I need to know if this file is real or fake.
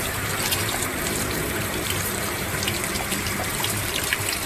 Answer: fake